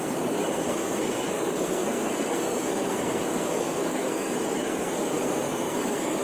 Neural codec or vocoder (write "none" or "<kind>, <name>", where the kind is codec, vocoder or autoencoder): codec, SNAC